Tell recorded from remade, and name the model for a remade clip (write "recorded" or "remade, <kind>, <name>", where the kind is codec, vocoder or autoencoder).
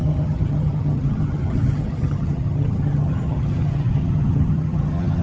remade, vocoder, HiFi-GAN